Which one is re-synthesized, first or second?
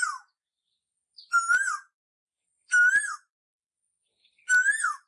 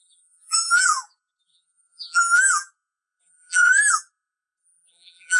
second